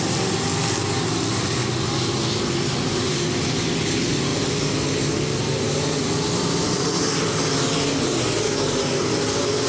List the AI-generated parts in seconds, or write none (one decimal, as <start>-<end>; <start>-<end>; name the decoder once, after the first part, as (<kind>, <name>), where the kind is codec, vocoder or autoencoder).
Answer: none